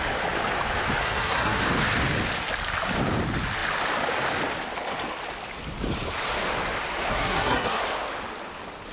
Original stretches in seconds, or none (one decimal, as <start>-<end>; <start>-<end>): 0.0-1.0; 1.6-7.1; 7.8-8.9